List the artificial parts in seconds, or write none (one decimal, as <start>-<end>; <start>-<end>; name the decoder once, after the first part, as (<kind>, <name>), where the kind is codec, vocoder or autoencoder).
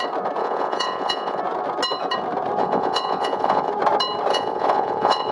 0.4-1.4 (vocoder, Vocos); 2.6-3.7; 4.3-5.3